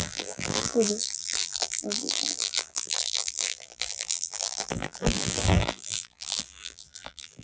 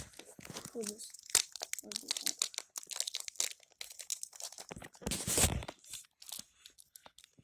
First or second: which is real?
second